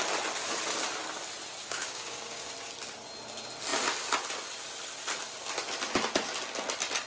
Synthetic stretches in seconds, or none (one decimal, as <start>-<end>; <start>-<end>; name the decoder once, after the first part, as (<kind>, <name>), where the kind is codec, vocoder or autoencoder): 1.6-2.5 (codec, DAC)